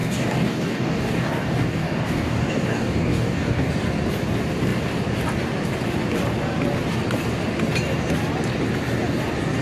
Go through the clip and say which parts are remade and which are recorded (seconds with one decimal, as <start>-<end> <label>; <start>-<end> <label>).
0.0-3.7 remade; 3.7-9.6 recorded